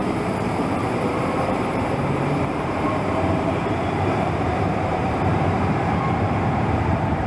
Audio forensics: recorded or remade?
remade